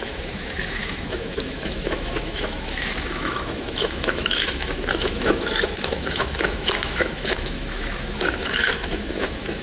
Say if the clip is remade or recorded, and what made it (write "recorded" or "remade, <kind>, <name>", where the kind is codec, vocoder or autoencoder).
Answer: remade, autoencoder, DAC-VAE